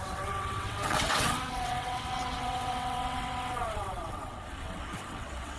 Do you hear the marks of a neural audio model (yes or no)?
yes